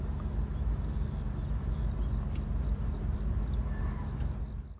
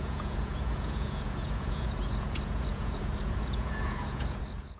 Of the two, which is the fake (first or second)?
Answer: second